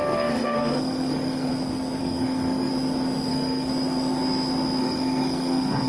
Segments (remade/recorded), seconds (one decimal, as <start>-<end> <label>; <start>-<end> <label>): 0.0-1.5 remade; 1.5-2.0 recorded; 2.0-2.7 remade; 2.7-3.3 recorded; 3.3-3.7 remade; 3.7-4.8 recorded; 4.8-5.9 remade